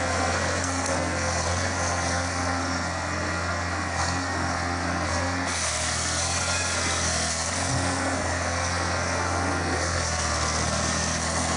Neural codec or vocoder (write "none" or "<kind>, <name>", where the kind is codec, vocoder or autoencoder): codec, SNAC